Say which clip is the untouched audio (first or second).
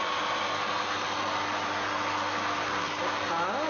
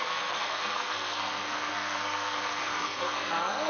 first